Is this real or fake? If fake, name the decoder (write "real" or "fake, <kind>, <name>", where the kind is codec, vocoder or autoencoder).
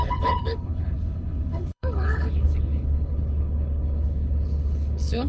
fake, codec, HILCodec